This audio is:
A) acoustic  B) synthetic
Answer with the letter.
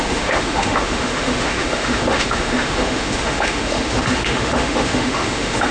B